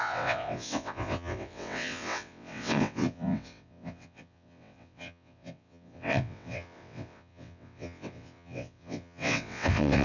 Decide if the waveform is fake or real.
fake